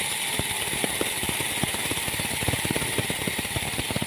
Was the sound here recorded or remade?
recorded